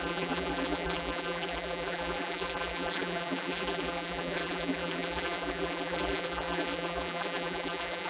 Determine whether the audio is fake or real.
fake